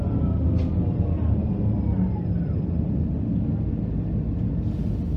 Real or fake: real